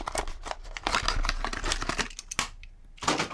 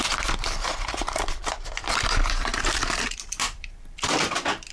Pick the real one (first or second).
first